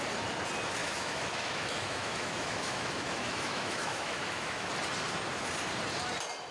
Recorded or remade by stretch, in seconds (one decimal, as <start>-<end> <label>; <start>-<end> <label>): 0.0-0.8 recorded; 0.8-4.7 remade; 4.7-6.5 recorded